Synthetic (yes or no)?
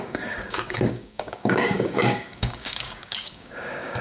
yes